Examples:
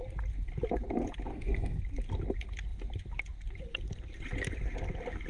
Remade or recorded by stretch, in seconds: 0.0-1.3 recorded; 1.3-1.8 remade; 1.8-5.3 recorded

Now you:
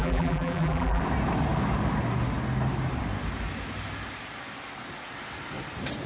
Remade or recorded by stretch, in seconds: 0.0-1.0 remade; 1.0-6.1 recorded

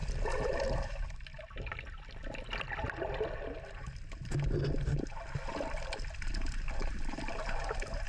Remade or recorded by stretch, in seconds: 0.0-0.8 remade; 0.8-6.8 recorded; 6.8-7.3 remade; 7.3-8.1 recorded